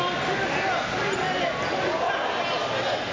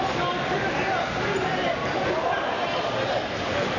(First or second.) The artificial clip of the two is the second